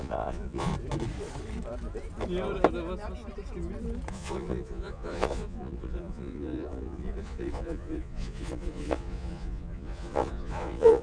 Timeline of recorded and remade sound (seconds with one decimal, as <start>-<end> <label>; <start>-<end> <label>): 0.0-0.7 remade; 0.7-4.1 recorded; 4.1-11.0 remade